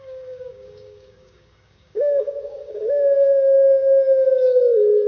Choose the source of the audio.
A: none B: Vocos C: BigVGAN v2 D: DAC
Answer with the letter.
D